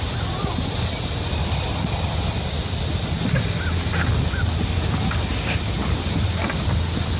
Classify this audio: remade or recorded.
recorded